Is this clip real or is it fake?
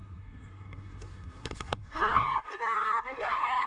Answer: fake